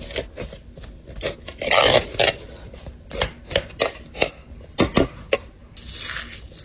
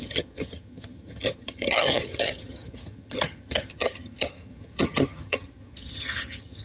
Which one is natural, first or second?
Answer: first